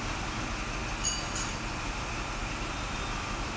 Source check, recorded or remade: recorded